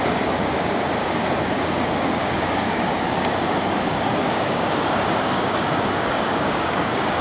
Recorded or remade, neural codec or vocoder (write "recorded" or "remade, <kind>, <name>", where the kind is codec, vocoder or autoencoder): remade, codec, DAC